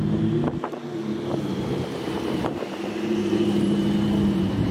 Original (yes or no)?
no